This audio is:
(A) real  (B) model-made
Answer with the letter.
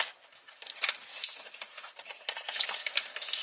A